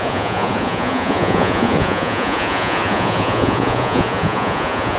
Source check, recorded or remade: remade